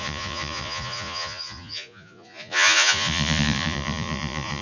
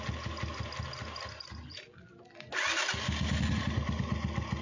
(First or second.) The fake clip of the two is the first